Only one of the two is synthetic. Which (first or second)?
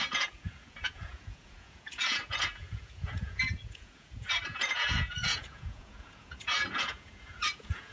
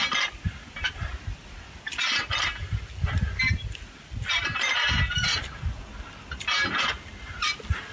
first